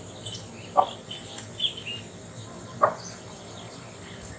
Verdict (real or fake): real